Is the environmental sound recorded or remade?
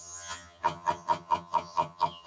remade